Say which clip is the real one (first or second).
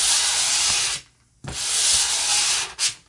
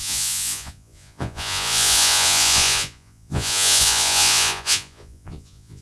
first